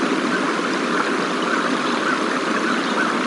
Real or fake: real